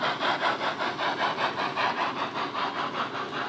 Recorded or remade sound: recorded